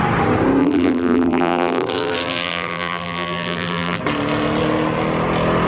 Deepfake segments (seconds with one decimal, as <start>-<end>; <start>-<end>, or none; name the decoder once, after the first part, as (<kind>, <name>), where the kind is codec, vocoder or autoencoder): 0.6-4.0 (vocoder, BigVGAN v2)